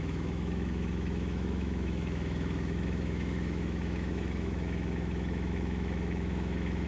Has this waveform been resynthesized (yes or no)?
yes